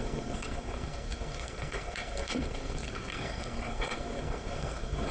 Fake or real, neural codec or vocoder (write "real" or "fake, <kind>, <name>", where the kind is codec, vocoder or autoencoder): fake, codec, SNAC